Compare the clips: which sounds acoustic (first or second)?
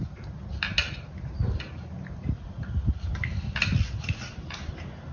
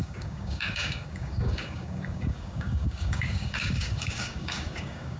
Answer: first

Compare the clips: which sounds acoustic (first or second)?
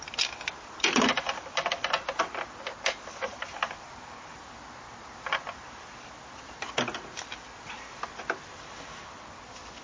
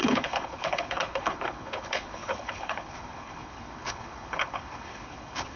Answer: first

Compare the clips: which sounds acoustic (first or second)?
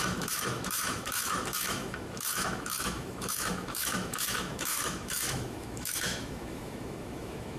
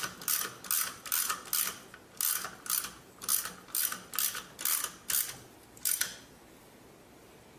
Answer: second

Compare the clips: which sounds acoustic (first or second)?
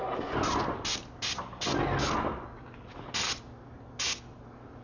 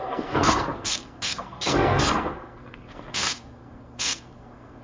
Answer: first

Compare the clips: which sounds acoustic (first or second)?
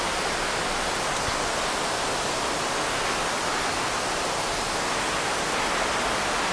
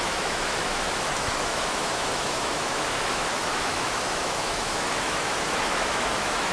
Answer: first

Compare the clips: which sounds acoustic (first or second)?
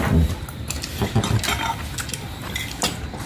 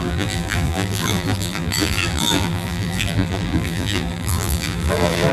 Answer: first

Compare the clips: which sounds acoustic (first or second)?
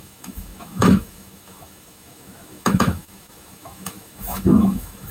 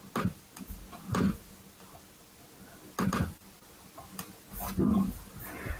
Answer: second